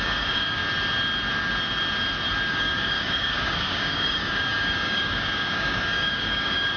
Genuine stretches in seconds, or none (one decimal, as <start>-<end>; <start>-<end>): 0.6-2.5